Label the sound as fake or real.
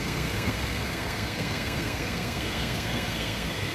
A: fake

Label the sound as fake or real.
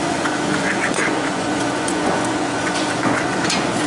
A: fake